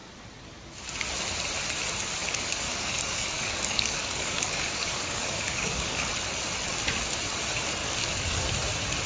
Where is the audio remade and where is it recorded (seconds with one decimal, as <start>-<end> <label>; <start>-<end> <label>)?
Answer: 0.0-2.2 recorded; 2.2-6.1 remade; 6.1-7.8 recorded; 7.8-8.4 remade; 8.4-9.1 recorded